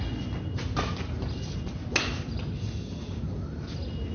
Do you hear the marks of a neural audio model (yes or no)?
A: no